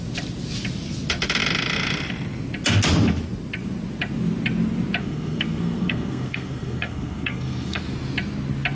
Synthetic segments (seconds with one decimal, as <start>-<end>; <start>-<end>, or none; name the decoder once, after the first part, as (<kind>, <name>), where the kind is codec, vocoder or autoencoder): 5.0-7.8 (codec, SNAC)

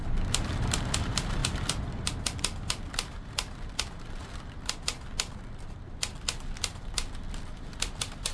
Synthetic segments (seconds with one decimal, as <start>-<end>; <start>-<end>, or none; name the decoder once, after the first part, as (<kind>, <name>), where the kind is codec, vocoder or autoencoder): 0.0-8.3 (vocoder, BigVGAN v2)

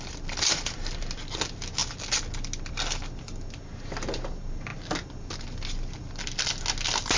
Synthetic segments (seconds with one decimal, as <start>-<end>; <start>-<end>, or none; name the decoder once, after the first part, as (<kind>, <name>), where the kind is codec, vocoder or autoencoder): none

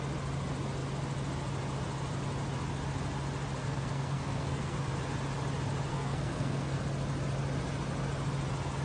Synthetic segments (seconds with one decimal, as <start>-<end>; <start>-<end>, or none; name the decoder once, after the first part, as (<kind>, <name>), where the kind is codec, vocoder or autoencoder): 3.6-4.9 (codec, SNAC); 5.9-6.8

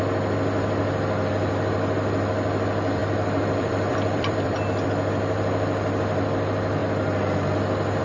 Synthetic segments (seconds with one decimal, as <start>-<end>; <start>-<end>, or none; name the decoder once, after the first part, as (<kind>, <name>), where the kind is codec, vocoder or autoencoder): 3.0-4.9 (vocoder, BigVGAN v2)

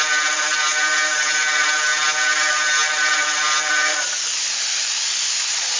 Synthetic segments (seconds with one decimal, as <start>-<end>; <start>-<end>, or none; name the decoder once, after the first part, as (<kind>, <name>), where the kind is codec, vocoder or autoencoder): none